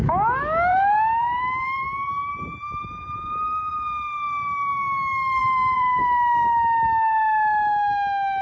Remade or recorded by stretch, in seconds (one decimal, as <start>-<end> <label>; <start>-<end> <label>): 0.0-0.7 recorded; 0.7-3.7 remade; 3.7-5.4 recorded; 5.4-6.0 remade; 6.0-8.4 recorded